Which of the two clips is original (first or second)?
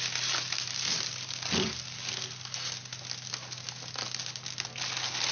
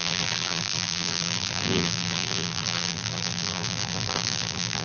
first